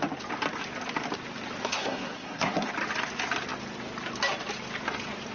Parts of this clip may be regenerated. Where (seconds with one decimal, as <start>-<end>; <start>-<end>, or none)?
1.6-2.7